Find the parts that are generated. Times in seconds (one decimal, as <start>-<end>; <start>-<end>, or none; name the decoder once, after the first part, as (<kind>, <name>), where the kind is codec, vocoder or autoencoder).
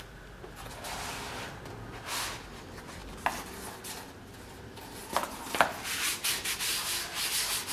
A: none